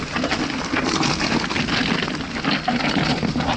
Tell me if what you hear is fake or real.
real